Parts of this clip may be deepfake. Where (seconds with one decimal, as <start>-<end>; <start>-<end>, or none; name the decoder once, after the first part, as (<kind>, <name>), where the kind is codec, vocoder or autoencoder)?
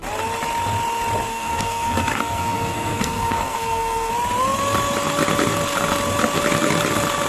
1.3-4.1 (codec, SNAC)